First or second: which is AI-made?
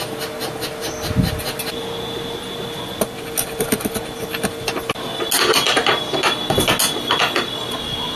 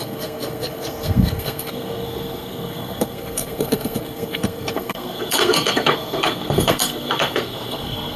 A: second